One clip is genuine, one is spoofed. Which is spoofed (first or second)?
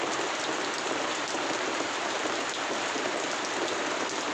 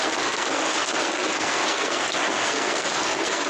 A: second